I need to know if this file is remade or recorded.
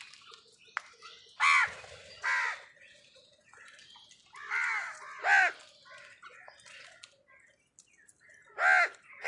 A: recorded